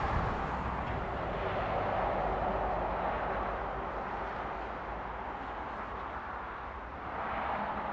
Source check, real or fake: real